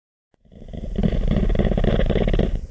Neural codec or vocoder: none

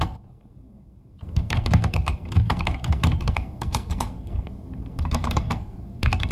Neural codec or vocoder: codec, SNAC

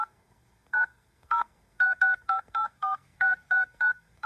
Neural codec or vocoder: codec, SNAC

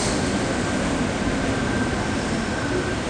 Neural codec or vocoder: none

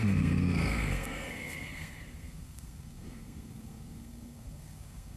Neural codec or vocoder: codec, SNAC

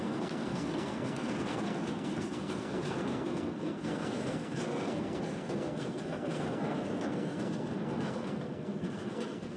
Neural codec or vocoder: codec, SNAC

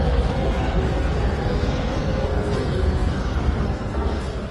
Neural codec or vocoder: codec, SNAC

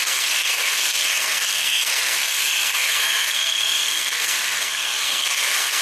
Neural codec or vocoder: codec, SNAC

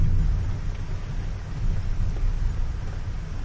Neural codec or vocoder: none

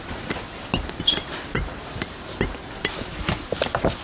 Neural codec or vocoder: none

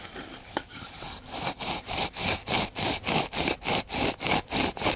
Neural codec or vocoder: none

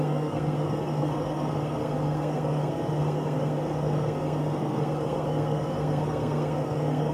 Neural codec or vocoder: codec, SNAC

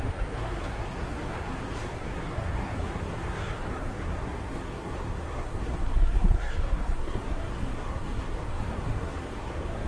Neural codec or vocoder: codec, SNAC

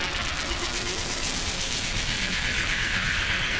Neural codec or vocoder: codec, SNAC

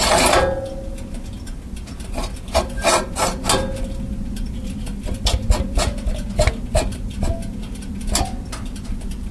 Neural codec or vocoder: none